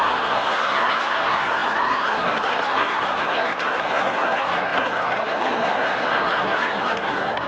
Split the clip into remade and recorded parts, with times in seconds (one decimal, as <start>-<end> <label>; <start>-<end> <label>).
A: 0.0-7.5 remade

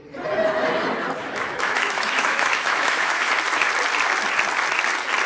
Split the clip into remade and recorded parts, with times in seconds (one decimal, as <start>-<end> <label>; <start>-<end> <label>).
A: 0.0-1.2 recorded; 1.2-3.3 remade; 3.3-5.3 recorded